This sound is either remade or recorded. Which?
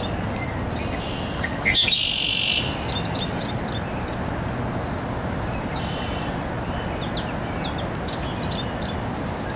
recorded